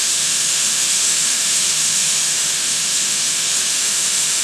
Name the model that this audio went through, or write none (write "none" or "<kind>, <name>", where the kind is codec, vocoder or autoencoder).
autoencoder, DAC-VAE